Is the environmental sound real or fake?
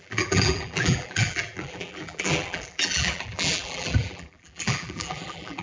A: fake